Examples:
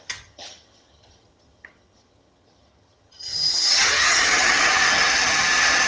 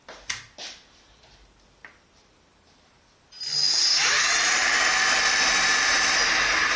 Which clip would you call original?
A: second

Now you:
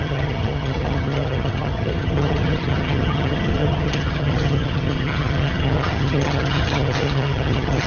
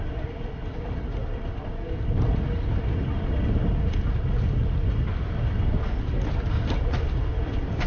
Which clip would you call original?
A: second